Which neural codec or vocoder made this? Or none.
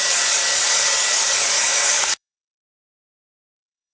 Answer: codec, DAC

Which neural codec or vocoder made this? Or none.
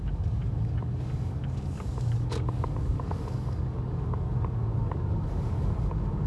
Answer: codec, DAC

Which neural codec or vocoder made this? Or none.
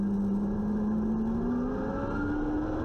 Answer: none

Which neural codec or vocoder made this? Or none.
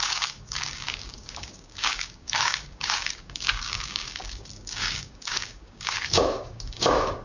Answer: codec, DAC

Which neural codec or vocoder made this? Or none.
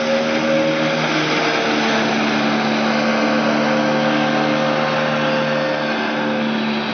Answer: none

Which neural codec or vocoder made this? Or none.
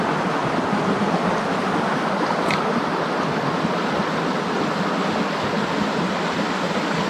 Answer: none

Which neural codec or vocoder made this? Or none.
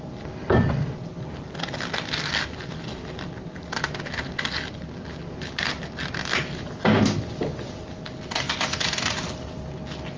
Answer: none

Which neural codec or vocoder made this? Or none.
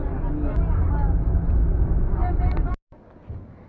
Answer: none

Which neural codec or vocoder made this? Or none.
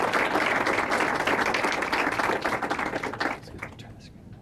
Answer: none